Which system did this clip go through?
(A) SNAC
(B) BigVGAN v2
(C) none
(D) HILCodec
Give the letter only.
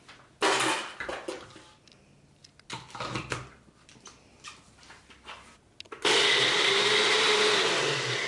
C